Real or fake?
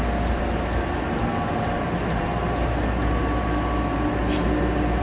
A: real